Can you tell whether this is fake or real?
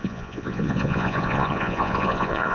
fake